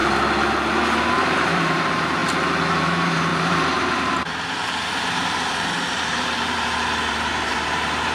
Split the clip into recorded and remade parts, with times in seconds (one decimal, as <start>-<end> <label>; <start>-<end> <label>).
0.0-1.1 recorded; 1.1-2.2 remade; 2.2-2.8 recorded; 2.8-8.1 remade